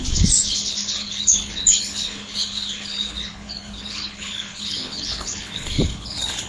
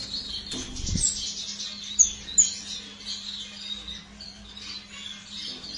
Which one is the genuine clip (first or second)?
second